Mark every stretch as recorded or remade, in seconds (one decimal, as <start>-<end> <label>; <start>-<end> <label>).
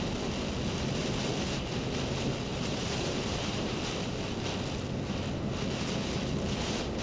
0.0-2.5 recorded; 2.5-3.8 remade; 3.8-7.0 recorded